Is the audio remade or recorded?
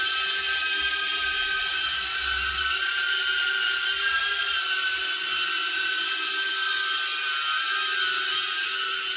recorded